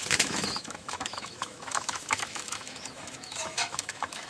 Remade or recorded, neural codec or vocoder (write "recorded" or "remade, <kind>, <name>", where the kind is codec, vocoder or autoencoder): remade, autoencoder, DAC-VAE